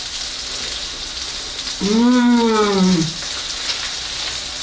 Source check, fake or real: real